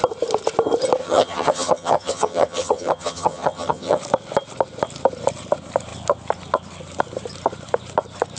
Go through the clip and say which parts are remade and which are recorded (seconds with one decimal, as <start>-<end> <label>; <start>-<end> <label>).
0.0-1.0 recorded; 1.0-4.0 remade; 4.0-8.4 recorded

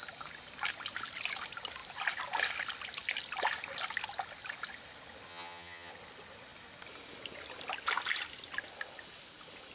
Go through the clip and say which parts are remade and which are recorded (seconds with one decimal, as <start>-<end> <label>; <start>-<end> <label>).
0.0-5.3 recorded; 5.3-5.9 remade; 5.9-9.7 recorded

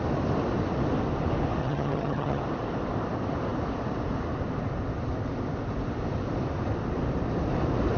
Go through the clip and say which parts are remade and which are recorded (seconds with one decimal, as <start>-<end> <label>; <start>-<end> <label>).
0.0-1.6 recorded; 1.6-2.4 remade; 2.4-8.0 recorded